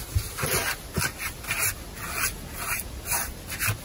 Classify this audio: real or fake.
real